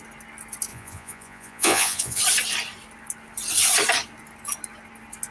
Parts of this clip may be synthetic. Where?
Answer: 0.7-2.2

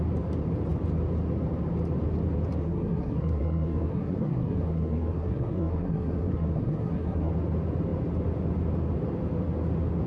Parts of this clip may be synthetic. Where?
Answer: 2.6-7.3

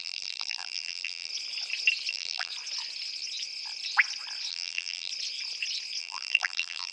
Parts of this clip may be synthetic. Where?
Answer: 0.0-1.3; 2.1-2.5; 4.5-5.1; 6.0-6.9

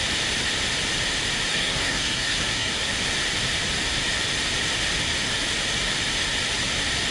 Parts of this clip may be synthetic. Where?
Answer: 1.5-2.9

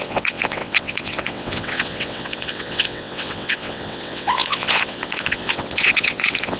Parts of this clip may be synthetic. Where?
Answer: 0.0-6.6

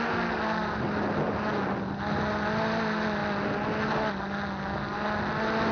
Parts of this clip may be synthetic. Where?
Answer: none